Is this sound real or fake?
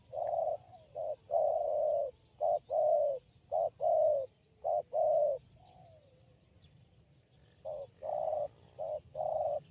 real